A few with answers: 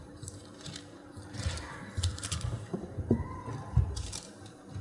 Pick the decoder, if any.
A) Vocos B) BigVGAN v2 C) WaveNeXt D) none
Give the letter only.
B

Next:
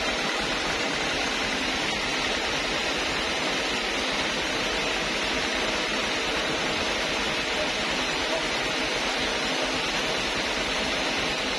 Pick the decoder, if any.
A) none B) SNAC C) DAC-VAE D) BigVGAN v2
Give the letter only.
A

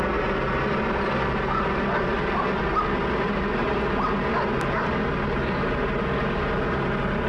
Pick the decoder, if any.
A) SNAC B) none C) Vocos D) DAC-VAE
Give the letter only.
B